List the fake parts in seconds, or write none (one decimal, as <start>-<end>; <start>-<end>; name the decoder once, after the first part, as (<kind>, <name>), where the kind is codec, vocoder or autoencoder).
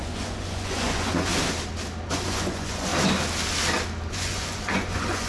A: 0.0-1.3 (vocoder, Vocos); 2.1-2.9; 4.1-5.3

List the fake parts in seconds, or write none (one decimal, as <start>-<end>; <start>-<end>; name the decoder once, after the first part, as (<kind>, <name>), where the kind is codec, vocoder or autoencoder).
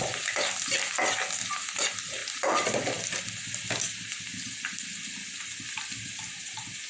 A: none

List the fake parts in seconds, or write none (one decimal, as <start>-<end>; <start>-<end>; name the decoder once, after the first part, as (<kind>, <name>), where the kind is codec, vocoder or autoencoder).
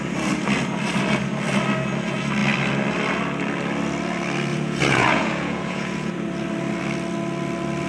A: 4.5-6.1 (vocoder, Vocos)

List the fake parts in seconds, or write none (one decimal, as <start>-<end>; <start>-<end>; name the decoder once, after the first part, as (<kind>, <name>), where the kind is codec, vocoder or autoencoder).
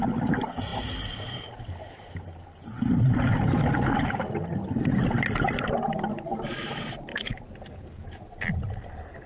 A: 7.1-8.3 (vocoder, Vocos)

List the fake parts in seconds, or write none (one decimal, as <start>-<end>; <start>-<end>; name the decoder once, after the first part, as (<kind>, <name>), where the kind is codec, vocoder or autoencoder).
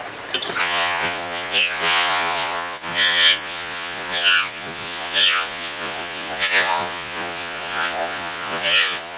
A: 0.6-9.2 (vocoder, Vocos)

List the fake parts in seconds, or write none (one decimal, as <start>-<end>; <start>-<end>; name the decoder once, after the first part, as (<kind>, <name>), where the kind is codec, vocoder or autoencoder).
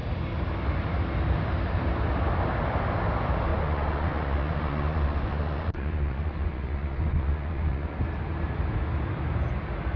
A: 3.5-8.0 (vocoder, Vocos)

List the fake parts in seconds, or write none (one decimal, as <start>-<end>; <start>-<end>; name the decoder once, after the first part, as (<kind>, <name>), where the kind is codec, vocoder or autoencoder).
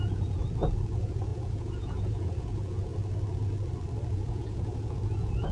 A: 0.0-0.4 (vocoder, Vocos); 0.9-2.9; 4.1-5.5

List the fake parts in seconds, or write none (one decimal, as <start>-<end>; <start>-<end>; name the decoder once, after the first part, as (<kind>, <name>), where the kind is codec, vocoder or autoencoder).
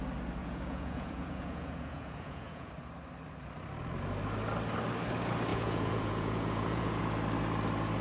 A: 0.4-2.7 (vocoder, Vocos); 5.5-7.0